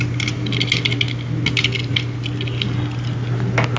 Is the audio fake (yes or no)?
no